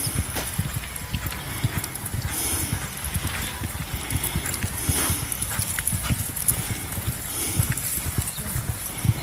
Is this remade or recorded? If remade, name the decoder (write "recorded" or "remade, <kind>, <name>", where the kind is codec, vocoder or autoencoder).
recorded